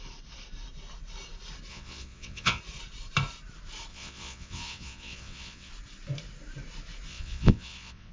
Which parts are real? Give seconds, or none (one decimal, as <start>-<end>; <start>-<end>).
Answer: 0.0-1.7; 2.6-3.9; 5.7-7.1

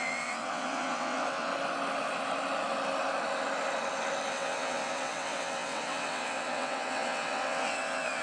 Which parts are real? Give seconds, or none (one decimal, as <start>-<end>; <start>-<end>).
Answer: 1.5-4.3

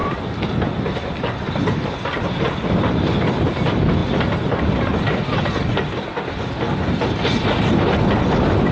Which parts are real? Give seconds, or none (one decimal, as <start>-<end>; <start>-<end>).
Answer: 0.0-8.7

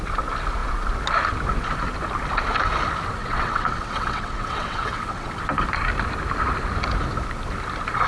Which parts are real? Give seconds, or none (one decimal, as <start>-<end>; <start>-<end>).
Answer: 0.0-3.2; 5.3-8.1

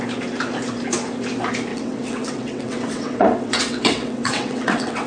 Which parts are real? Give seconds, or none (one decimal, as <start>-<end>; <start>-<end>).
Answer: 0.0-1.7